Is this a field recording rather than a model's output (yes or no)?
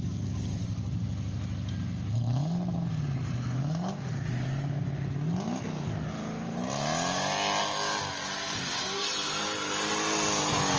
yes